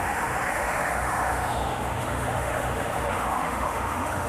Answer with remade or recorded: remade